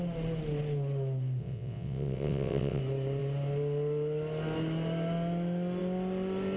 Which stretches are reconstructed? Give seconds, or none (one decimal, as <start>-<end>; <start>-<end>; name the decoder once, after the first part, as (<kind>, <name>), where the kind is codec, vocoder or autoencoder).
1.4-2.8 (vocoder, WaveNeXt)